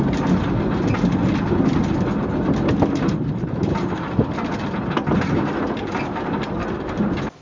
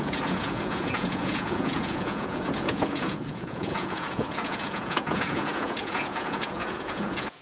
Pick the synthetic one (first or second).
second